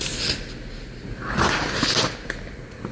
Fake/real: real